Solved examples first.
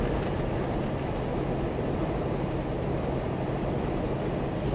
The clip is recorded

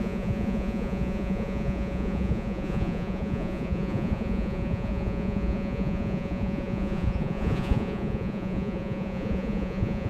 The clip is remade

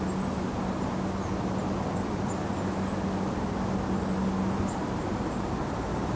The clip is recorded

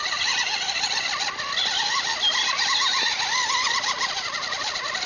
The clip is recorded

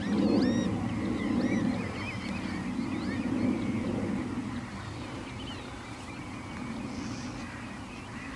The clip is recorded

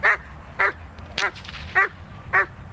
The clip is recorded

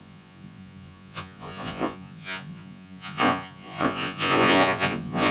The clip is remade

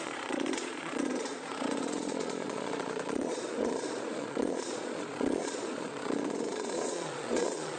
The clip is remade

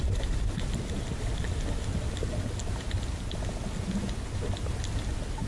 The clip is recorded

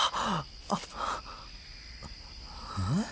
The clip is recorded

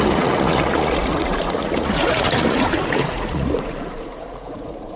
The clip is remade